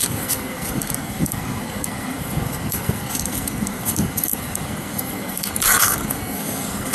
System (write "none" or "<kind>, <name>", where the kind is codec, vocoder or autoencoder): codec, SNAC